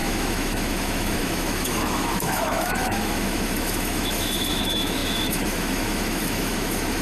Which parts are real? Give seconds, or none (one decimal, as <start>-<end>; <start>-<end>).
none